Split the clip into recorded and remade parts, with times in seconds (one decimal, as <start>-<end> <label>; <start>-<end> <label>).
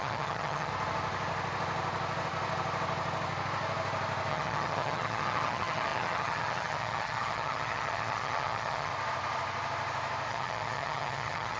0.0-0.7 remade; 0.7-4.3 recorded; 4.3-8.9 remade; 8.9-10.3 recorded; 10.3-11.6 remade